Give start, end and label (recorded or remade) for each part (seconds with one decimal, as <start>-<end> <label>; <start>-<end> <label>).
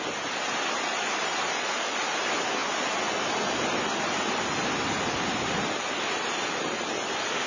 0.0-7.5 recorded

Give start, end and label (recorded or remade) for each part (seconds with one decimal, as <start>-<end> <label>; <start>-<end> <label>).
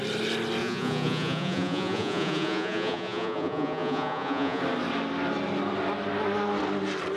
0.0-0.6 recorded; 0.6-4.6 remade; 4.6-7.2 recorded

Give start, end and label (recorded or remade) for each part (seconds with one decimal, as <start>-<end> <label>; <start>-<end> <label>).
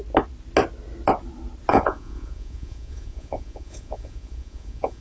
0.0-1.7 recorded; 1.7-5.0 remade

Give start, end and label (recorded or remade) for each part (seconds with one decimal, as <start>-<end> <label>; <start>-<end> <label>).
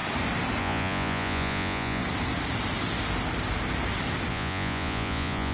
0.0-0.6 recorded; 0.6-2.0 remade; 2.0-4.3 recorded; 4.3-5.5 remade